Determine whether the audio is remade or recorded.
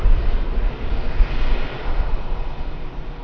recorded